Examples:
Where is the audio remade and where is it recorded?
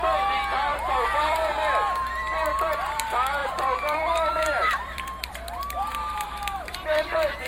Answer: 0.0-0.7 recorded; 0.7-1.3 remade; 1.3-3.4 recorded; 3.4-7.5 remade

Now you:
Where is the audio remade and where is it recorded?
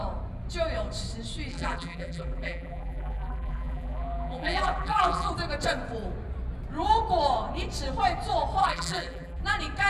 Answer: 0.0-1.5 recorded; 1.5-5.3 remade; 5.3-8.6 recorded; 8.6-9.4 remade; 9.4-9.9 recorded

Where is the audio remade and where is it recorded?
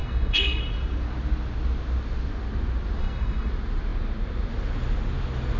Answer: 0.0-0.6 remade; 0.6-3.0 recorded; 3.0-3.5 remade; 3.5-5.6 recorded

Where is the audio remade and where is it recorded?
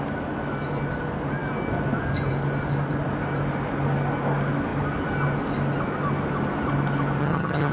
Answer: 0.0-7.2 recorded; 7.2-7.7 remade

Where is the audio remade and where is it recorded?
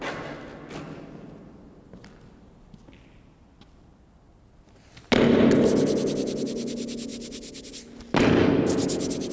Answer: 0.0-9.3 recorded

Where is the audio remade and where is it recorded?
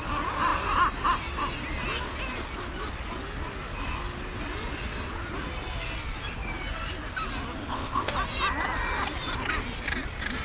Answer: 0.0-7.6 recorded; 7.6-8.1 remade; 8.1-10.4 recorded